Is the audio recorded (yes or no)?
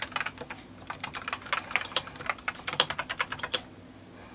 yes